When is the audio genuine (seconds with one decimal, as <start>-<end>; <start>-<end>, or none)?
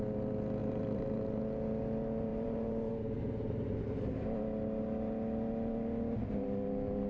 0.0-0.6; 1.4-2.3; 2.9-7.1